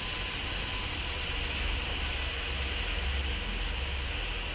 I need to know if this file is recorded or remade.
recorded